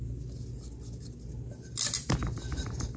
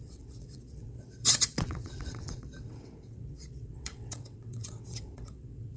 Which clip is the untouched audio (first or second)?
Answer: first